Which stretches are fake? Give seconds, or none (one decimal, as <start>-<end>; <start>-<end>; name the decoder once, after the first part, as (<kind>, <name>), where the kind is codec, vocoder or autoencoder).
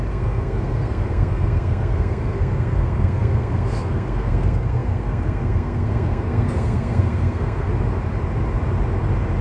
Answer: 0.0-7.7 (codec, SNAC)